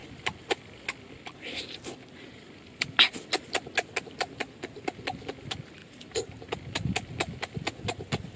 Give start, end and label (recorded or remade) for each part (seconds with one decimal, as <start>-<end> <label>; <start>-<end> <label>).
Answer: 0.0-5.8 recorded; 5.8-6.4 remade; 6.4-8.4 recorded